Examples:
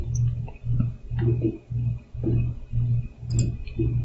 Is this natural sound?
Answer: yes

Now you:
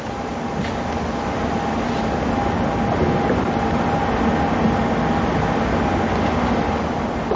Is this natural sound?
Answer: yes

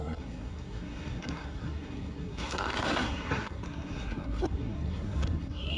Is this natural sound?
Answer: no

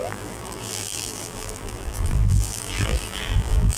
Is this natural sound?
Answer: no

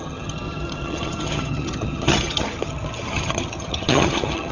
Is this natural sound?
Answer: no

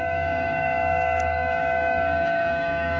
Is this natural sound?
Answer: no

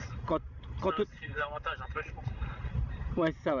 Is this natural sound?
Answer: no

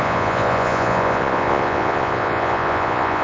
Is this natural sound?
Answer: no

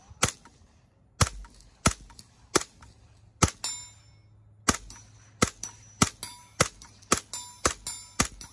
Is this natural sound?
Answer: yes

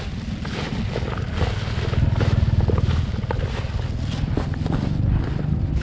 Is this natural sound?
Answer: yes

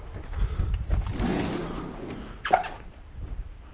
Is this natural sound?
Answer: no